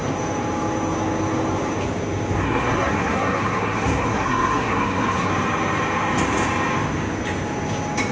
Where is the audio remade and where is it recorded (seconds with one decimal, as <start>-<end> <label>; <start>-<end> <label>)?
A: 0.0-2.4 recorded; 2.4-5.3 remade; 5.3-8.1 recorded